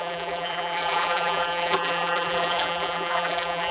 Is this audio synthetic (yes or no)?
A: yes